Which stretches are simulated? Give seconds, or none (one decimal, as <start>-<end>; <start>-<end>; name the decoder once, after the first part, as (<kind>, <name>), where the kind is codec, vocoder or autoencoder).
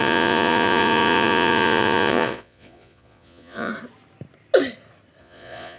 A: 0.0-3.7 (vocoder, Vocos); 5.2-5.8